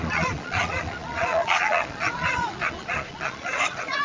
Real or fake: fake